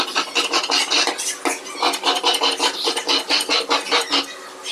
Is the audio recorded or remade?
recorded